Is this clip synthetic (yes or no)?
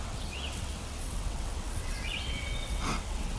yes